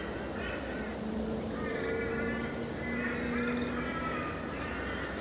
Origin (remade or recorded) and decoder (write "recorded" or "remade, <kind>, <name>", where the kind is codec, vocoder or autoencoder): recorded